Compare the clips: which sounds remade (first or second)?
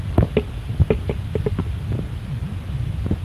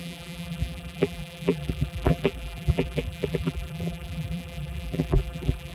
second